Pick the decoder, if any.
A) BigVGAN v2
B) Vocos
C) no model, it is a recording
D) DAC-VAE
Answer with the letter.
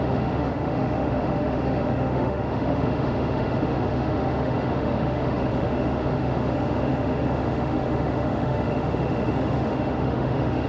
D